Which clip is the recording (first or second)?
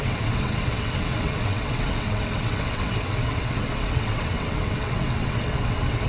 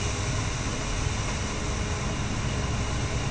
second